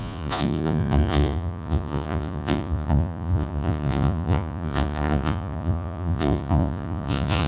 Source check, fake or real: fake